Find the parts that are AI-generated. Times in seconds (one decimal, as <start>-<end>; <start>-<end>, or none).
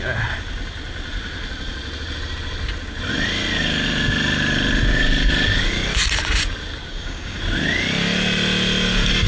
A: 6.9-7.4